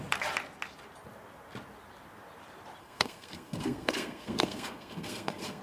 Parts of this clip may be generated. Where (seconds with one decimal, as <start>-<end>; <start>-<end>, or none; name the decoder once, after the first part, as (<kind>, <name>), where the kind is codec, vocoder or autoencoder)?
2.8-5.6 (codec, SNAC)

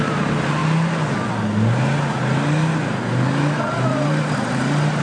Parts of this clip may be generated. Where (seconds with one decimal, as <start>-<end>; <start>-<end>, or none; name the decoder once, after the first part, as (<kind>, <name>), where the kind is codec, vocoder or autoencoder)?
0.0-0.6 (vocoder, BigVGAN v2); 3.6-5.0

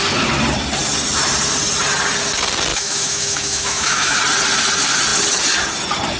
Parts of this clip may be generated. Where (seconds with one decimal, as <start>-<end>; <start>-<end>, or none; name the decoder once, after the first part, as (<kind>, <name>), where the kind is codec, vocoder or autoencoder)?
2.7-4.2 (autoencoder, DAC-VAE)

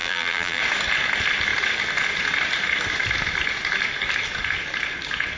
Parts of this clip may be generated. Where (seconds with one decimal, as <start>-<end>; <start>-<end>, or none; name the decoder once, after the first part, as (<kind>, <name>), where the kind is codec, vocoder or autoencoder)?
0.0-0.6 (vocoder, BigVGAN v2)

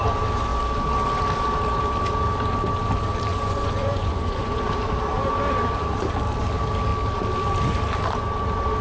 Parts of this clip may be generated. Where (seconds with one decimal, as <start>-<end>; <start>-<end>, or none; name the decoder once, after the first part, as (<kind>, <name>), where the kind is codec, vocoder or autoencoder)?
3.3-4.6 (vocoder, Vocos)

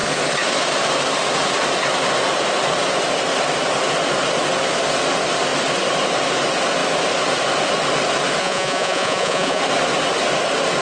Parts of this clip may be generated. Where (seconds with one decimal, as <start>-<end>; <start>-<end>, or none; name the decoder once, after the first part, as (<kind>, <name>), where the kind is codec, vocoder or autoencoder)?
8.4-9.6 (vocoder, Vocos)

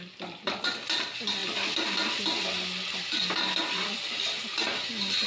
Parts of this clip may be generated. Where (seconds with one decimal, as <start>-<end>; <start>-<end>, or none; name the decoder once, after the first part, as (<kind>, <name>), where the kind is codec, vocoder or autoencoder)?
none